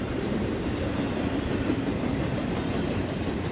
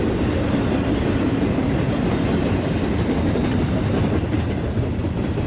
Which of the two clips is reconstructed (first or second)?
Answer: first